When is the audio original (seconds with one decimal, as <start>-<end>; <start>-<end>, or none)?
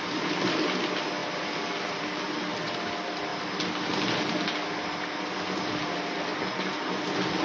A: 0.0-7.4